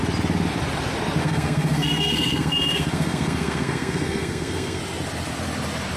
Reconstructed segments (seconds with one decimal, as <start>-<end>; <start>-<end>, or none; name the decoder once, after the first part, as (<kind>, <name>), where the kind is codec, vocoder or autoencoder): 1.2-4.8 (codec, SNAC)